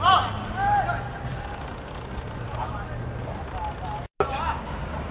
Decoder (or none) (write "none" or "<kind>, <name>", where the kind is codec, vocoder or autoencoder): none